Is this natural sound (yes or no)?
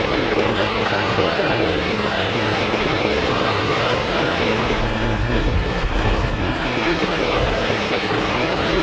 no